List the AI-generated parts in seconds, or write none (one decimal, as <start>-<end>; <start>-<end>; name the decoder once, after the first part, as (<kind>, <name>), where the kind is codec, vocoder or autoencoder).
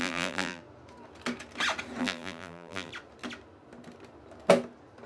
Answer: 0.0-0.6 (vocoder, BigVGAN v2); 2.0-2.9